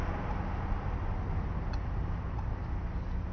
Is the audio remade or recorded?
recorded